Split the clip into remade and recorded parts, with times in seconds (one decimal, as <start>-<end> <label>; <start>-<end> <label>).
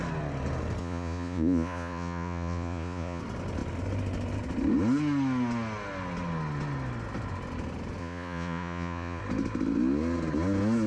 0.0-0.8 recorded; 0.8-3.2 remade; 3.2-8.0 recorded; 8.0-9.2 remade; 9.2-10.9 recorded